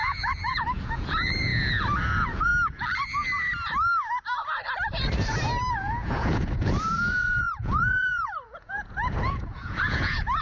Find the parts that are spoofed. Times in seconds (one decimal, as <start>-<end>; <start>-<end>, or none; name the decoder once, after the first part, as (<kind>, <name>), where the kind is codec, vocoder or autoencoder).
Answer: 0.0-1.5 (vocoder, Vocos); 2.0-2.5; 5.7-10.4